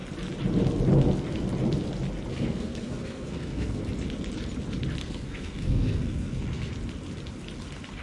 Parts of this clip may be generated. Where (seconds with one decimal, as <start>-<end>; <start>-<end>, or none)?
2.3-3.8; 5.0-6.7